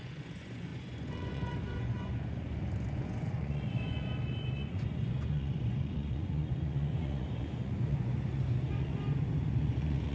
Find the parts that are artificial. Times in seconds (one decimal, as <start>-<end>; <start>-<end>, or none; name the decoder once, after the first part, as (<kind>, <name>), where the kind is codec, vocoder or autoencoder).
0.0-8.9 (vocoder, Vocos); 9.6-10.1